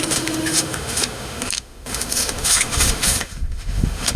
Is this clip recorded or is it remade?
remade